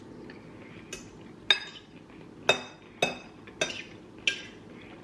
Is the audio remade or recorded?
recorded